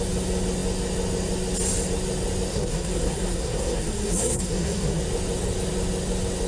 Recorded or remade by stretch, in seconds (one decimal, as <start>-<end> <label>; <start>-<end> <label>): 0.0-2.5 recorded; 2.5-5.0 remade; 5.0-6.5 recorded